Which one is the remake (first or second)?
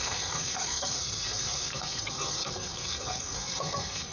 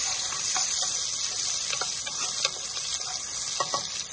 first